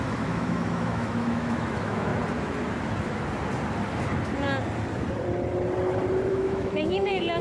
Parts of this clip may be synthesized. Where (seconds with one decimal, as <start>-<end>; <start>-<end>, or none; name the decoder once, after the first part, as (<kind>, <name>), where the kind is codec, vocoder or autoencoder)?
0.0-2.1 (autoencoder, DAC-VAE); 6.3-7.4